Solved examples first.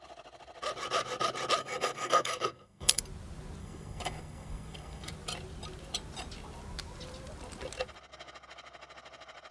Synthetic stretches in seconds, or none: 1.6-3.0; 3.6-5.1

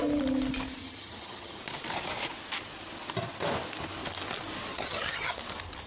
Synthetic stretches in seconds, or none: 0.8-1.6; 4.7-5.4

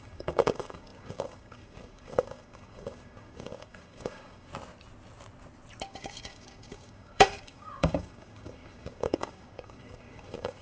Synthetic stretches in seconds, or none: 0.0-4.5; 5.8-10.6

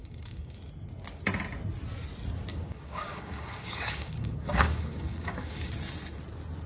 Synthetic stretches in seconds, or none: 0.0-0.6; 2.5-5.7